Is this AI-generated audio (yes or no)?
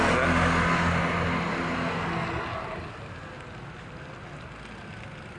no